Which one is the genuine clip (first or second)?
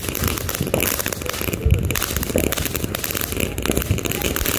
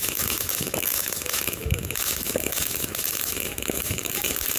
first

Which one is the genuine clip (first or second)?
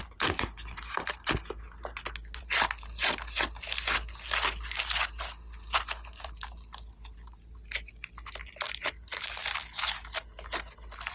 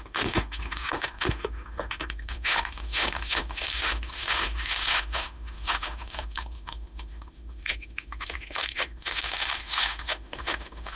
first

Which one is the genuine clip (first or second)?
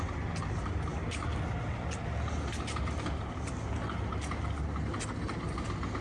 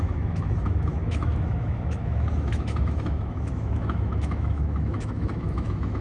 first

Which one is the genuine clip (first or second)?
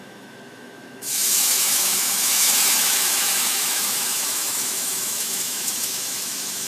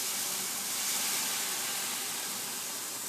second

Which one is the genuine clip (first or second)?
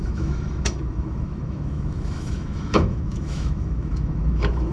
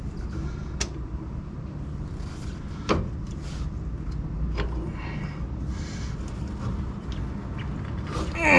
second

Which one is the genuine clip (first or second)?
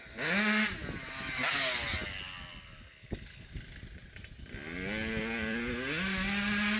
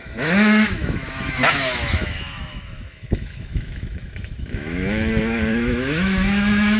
first